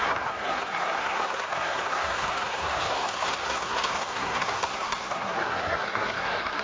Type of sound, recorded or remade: remade